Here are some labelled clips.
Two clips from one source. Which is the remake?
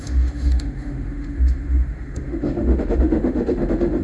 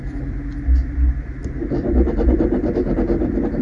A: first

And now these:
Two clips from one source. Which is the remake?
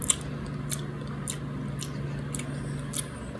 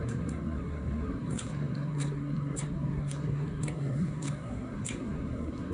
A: second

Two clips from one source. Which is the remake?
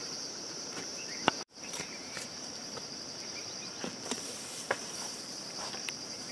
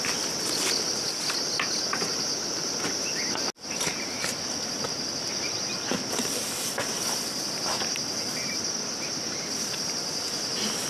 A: first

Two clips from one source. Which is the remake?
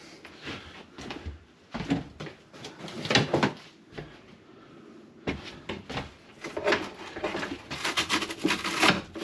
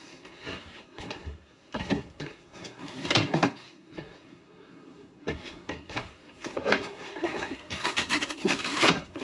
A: second